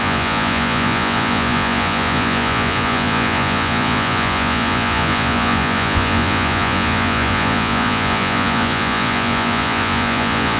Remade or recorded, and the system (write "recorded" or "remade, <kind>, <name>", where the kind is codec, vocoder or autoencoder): remade, vocoder, Vocos